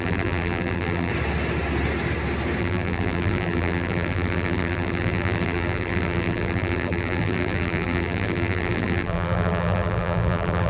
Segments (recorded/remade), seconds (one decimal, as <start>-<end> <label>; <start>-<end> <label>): 0.0-1.1 remade; 1.1-2.6 recorded; 2.6-10.7 remade